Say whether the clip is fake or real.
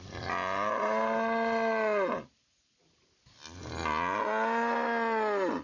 real